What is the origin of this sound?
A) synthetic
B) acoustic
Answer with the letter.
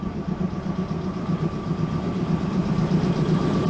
B